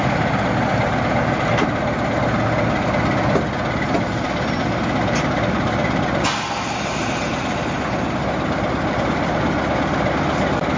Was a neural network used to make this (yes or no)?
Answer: no